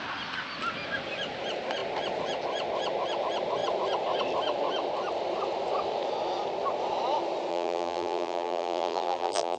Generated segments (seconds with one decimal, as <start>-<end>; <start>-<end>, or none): 7.5-9.6